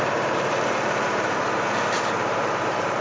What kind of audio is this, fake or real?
fake